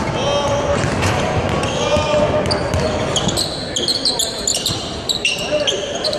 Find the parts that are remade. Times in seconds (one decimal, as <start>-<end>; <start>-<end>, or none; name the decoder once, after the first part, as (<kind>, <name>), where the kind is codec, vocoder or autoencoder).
4.5-6.2 (vocoder, BigVGAN v2)